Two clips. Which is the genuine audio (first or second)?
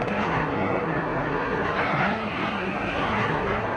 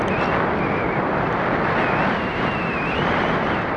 second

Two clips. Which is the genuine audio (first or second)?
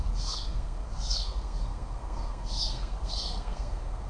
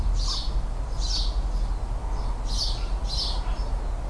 second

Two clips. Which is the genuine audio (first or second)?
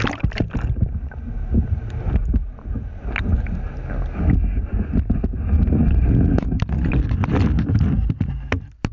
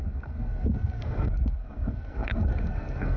first